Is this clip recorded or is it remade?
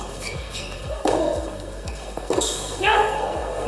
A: remade